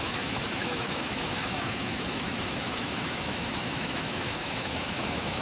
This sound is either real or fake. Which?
fake